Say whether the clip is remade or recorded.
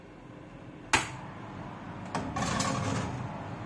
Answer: recorded